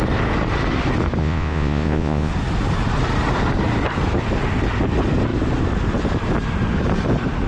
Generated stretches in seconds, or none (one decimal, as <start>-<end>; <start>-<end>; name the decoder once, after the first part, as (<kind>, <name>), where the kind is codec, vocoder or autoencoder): 1.2-2.3 (vocoder, Vocos)